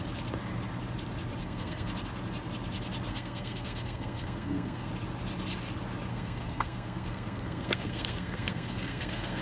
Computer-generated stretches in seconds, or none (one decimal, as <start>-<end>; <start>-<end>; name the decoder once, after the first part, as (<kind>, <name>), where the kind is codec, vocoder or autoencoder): 1.4-1.9 (codec, SNAC); 3.1-4.9; 6.1-9.4